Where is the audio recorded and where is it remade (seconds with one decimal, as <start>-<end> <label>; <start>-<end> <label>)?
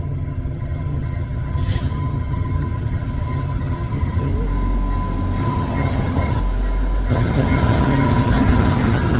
0.0-4.3 remade; 4.3-5.4 recorded; 5.4-6.4 remade; 6.4-7.1 recorded; 7.1-9.2 remade